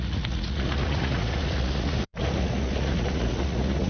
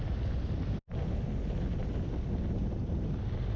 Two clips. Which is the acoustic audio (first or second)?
second